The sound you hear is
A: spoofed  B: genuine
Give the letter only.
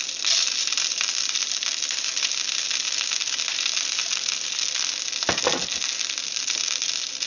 B